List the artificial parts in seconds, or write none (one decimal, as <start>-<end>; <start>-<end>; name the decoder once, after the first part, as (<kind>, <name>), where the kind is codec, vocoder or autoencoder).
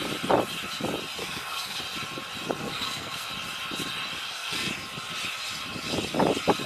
1.2-1.8 (codec, SNAC); 2.6-3.3; 4.2-4.7